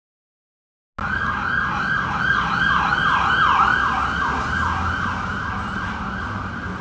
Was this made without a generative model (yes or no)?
yes